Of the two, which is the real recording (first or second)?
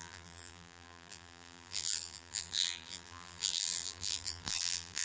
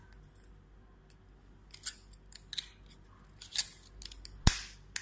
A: second